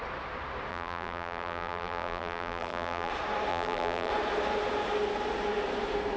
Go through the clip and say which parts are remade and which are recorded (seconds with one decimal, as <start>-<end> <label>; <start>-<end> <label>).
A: 0.0-0.7 recorded; 0.7-3.1 remade; 3.1-3.5 recorded; 3.5-4.1 remade; 4.1-6.2 recorded